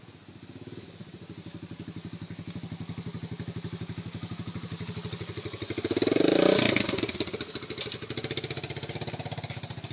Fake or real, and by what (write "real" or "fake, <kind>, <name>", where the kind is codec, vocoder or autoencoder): real